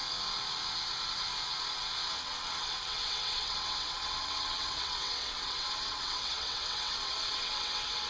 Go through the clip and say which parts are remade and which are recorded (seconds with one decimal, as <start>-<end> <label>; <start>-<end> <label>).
0.0-2.1 recorded; 2.1-8.1 remade